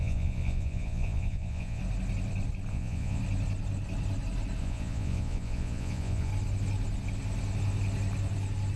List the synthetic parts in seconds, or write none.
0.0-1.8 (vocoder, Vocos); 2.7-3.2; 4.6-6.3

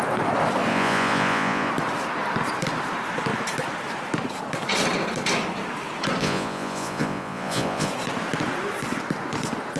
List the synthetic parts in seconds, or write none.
0.7-1.7 (vocoder, Vocos); 6.2-7.9

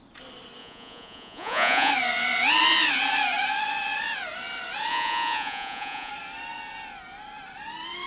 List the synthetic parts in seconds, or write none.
0.6-1.9 (vocoder, Vocos); 4.9-6.1

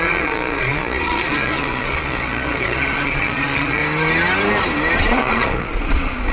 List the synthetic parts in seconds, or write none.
0.0-3.8 (vocoder, Vocos); 5.0-6.3

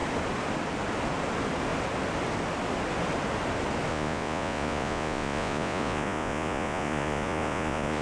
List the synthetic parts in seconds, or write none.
3.9-8.0 (vocoder, Vocos)